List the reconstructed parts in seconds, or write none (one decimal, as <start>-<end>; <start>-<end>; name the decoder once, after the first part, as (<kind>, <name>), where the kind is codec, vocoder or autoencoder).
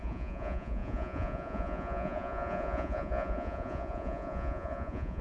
0.0-5.2 (vocoder, Vocos)